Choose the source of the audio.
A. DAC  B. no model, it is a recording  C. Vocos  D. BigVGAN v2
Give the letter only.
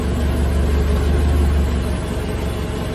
B